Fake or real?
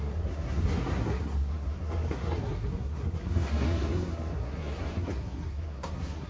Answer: fake